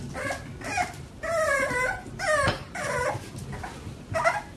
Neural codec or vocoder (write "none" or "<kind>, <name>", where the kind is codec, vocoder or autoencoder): none